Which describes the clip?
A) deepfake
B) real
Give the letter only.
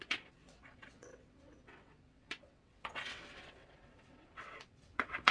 A